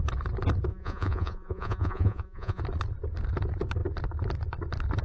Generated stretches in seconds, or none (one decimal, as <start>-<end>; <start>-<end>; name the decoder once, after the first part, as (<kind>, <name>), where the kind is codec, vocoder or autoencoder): 0.7-2.6 (vocoder, Vocos)